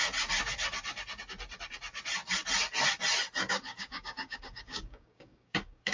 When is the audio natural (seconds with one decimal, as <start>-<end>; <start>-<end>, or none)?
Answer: 0.0-3.5

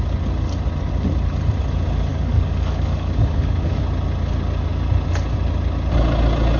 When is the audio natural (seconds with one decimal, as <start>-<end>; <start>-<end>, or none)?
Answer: 0.0-2.1; 3.8-6.6

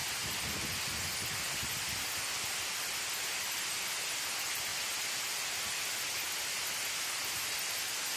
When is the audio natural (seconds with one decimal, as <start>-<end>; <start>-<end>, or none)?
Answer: 0.0-8.2